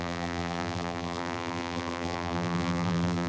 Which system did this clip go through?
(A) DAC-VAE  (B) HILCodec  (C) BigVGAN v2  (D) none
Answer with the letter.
C